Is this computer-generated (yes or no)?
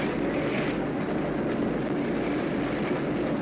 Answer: no